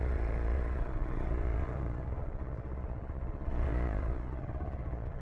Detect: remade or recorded remade